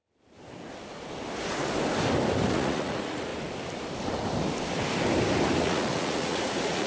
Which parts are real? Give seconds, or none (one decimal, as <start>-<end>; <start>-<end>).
0.0-2.5; 3.3-5.6